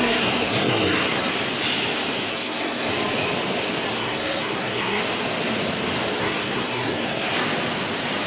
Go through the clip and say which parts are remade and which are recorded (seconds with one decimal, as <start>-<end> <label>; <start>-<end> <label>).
0.0-1.3 remade; 1.3-2.3 recorded; 2.3-2.9 remade; 2.9-3.9 recorded; 3.9-5.0 remade; 5.0-6.2 recorded; 6.2-7.3 remade; 7.3-8.3 recorded